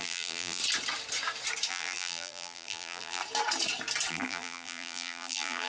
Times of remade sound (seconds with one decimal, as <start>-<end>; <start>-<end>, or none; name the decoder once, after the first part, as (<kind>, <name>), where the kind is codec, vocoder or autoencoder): 0.0-0.6 (vocoder, BigVGAN v2); 1.7-3.2; 4.1-5.7